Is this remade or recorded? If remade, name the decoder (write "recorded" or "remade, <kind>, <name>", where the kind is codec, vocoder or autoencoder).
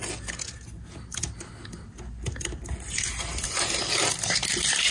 recorded